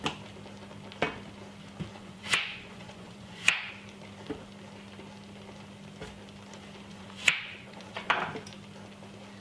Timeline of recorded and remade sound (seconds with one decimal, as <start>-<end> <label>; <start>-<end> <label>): 0.0-1.9 recorded; 1.9-3.7 remade; 3.7-6.9 recorded; 6.9-8.1 remade; 8.1-9.4 recorded